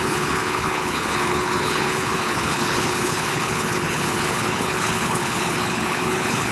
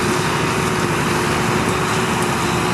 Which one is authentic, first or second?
second